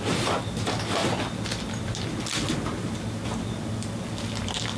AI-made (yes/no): no